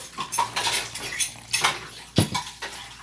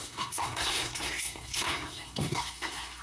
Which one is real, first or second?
first